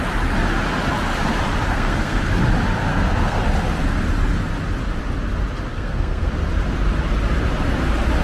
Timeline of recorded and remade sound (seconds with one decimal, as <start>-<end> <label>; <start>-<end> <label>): 0.0-1.7 recorded; 1.7-2.2 remade; 2.2-2.9 recorded; 2.9-3.4 remade; 3.4-5.7 recorded; 5.7-6.3 remade; 6.3-8.2 recorded